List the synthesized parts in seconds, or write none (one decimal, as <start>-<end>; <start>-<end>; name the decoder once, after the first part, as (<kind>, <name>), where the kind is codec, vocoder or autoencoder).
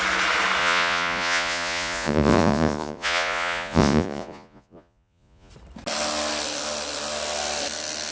0.6-5.5 (vocoder, Vocos)